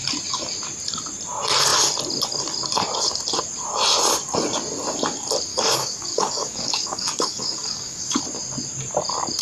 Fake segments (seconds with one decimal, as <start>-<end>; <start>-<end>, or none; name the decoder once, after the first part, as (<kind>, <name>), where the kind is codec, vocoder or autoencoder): 5.5-8.2 (codec, DAC)